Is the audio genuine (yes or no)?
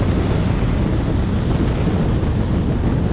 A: yes